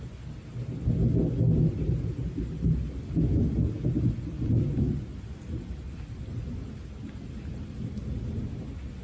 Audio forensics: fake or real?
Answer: real